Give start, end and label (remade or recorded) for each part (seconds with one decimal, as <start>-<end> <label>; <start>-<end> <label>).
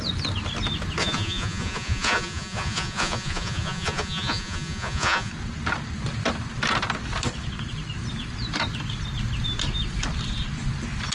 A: 0.0-1.0 recorded; 1.0-5.3 remade; 5.3-11.1 recorded